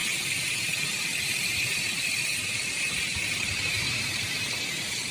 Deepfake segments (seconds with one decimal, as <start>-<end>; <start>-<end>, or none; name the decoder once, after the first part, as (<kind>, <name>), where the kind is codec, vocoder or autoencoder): 1.6-5.1 (vocoder, BigVGAN v2)